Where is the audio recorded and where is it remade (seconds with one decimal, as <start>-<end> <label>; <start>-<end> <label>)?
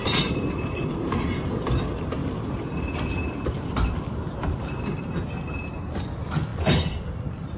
0.0-0.5 remade; 0.5-2.2 recorded; 2.2-4.8 remade; 4.8-6.5 recorded; 6.5-7.6 remade